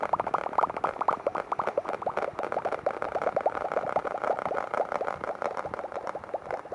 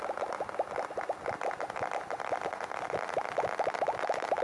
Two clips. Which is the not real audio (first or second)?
first